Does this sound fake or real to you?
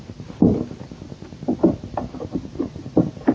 real